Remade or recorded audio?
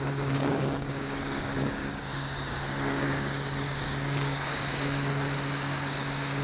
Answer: remade